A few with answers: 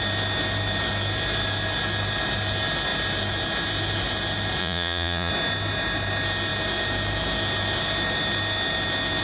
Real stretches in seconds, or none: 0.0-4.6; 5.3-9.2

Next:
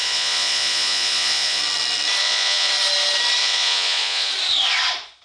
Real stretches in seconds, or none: 1.6-2.2; 2.7-3.4; 4.3-5.2

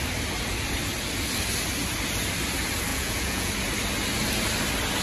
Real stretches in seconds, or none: 0.0-2.9; 3.5-5.0

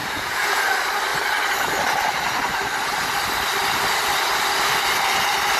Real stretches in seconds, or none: 0.6-5.6

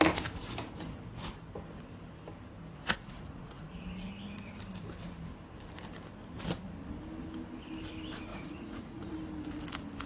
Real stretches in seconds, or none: 0.0-2.6; 3.7-8.3; 9.1-10.1